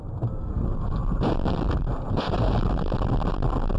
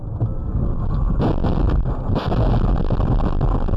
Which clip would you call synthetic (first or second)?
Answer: first